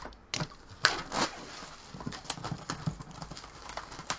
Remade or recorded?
recorded